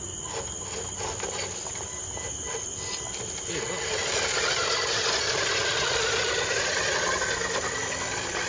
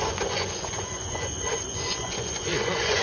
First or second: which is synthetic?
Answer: second